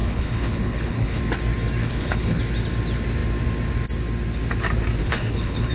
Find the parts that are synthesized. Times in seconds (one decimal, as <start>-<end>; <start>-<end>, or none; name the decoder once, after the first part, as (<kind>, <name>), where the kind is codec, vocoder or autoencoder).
0.0-1.2 (codec, HILCodec); 1.8-2.4; 5.0-5.7

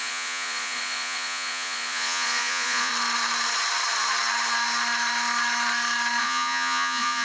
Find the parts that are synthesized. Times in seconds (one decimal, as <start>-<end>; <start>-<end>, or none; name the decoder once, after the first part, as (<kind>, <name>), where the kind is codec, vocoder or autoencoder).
0.0-2.9 (vocoder, Vocos); 6.2-7.2

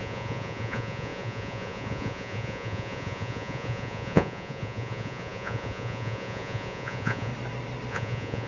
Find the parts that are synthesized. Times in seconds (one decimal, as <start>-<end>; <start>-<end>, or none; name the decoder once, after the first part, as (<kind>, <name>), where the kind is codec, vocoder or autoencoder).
0.0-7.3 (vocoder, Vocos); 7.9-8.5